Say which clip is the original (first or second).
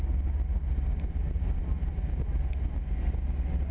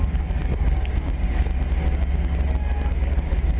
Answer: first